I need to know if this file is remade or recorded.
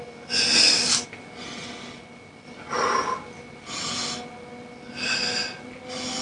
recorded